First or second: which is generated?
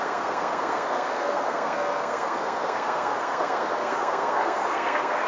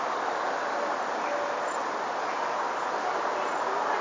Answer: first